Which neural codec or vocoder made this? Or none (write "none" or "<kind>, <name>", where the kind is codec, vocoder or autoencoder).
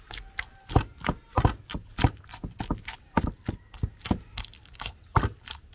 none